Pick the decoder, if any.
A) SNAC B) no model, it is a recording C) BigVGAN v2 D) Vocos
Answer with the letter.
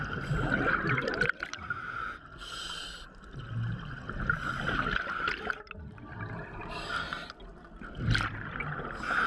B